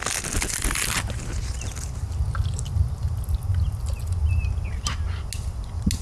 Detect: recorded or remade recorded